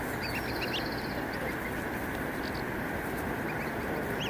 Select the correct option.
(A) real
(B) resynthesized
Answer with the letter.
A